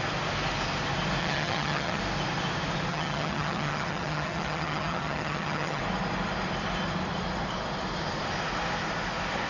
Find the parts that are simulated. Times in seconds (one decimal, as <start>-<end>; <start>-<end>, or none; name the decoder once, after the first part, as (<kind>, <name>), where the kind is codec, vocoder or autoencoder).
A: 1.2-2.0 (vocoder, HiFi-GAN); 2.9-5.8